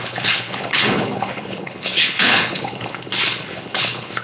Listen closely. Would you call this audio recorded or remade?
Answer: remade